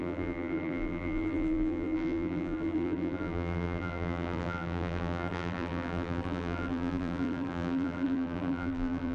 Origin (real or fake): fake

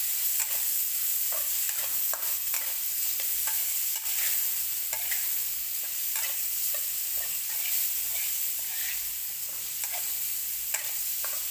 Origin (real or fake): real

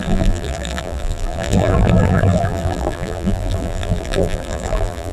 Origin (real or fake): fake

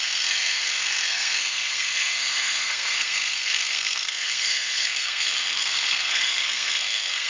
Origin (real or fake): fake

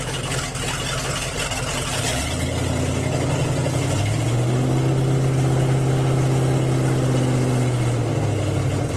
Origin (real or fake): real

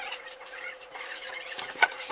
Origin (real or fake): fake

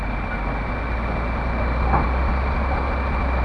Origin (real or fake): real